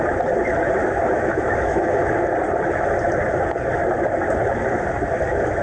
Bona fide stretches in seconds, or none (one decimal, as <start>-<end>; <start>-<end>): 0.0-0.8; 2.0-5.6